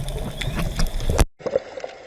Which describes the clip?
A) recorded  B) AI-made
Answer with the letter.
A